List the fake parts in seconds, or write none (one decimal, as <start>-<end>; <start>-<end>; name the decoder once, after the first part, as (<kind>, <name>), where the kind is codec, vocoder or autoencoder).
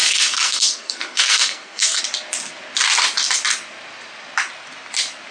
0.0-2.0 (codec, SNAC)